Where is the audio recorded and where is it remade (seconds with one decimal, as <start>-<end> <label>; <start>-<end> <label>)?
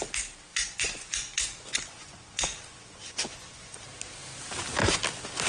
0.0-0.5 recorded; 0.5-3.8 remade; 3.8-5.5 recorded